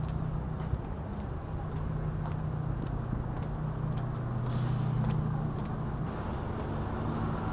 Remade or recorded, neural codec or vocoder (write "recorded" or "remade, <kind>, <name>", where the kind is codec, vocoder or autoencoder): recorded